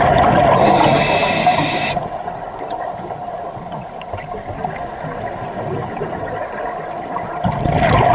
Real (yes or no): yes